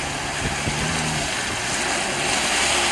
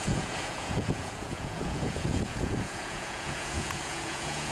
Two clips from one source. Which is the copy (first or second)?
second